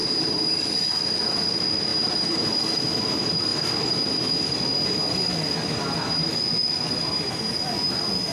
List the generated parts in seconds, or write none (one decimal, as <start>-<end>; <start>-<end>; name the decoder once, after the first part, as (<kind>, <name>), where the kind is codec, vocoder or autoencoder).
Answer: 0.0-0.6 (vocoder, BigVGAN v2); 1.9-2.5

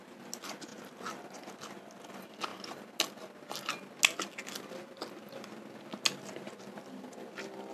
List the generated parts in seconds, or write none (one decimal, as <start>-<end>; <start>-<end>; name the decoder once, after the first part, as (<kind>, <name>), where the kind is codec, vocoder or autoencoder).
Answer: none

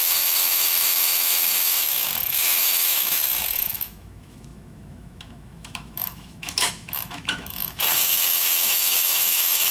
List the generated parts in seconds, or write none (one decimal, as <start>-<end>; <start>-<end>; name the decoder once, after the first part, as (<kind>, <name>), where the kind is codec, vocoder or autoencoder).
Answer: 0.0-9.7 (autoencoder, DAC-VAE)

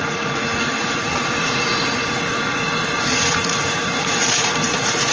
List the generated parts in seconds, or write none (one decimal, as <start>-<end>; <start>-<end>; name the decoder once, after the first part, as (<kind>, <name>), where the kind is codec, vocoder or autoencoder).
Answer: 0.0-5.1 (vocoder, Vocos)

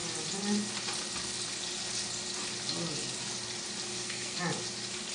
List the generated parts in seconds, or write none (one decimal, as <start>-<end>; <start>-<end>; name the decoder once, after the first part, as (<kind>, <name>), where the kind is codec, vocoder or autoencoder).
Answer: 3.9-4.4 (codec, SNAC)

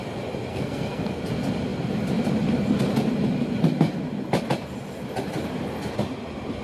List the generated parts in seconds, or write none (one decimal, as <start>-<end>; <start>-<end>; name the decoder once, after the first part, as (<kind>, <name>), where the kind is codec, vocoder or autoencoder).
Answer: 0.5-1.2 (codec, SNAC)

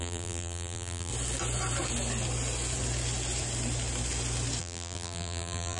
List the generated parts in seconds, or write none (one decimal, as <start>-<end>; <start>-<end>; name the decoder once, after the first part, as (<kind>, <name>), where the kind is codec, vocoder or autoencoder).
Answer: 0.0-1.1 (vocoder, BigVGAN v2); 4.6-5.8

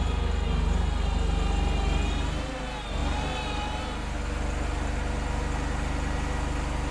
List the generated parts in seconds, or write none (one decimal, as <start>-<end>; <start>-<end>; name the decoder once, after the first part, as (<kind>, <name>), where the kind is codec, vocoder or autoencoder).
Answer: none